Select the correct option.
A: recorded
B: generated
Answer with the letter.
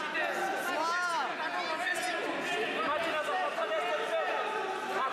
A